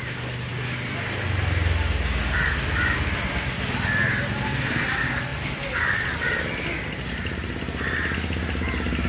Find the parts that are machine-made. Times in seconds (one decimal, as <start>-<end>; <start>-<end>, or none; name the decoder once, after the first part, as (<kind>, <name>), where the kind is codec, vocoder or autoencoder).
none